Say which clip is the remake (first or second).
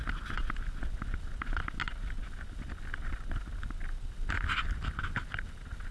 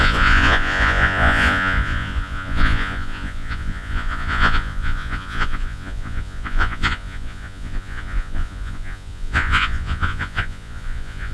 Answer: second